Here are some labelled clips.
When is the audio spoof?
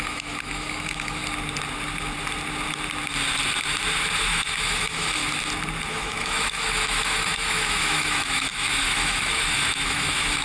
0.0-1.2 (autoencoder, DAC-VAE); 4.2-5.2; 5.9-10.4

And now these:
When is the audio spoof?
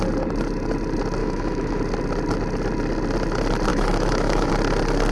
1.2-1.8 (autoencoder, DAC-VAE); 3.7-4.5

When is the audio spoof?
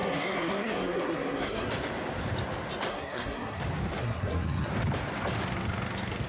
0.0-1.7 (codec, SNAC); 2.9-3.6; 4.0-4.7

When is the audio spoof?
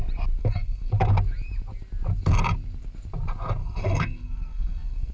0.4-0.9 (codec, SNAC); 3.6-5.1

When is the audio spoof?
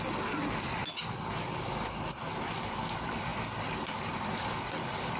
none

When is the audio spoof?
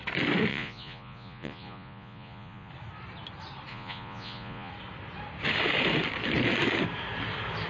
0.5-2.7 (vocoder, Vocos); 3.7-4.7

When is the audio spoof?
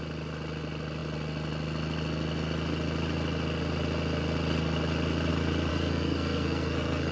5.7-7.1 (codec, SNAC)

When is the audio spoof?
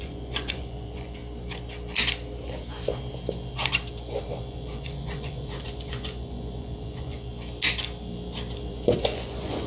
0.0-1.2 (vocoder, Vocos); 4.2-7.3; 8.7-9.7